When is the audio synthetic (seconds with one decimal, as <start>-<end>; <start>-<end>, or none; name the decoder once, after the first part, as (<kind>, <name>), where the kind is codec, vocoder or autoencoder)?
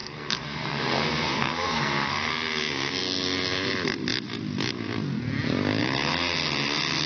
0.0-2.3 (codec, SNAC)